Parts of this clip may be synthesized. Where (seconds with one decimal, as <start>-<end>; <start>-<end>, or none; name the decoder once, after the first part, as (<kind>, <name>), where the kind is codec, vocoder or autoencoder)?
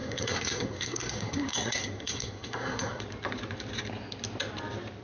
0.0-3.0 (codec, SNAC)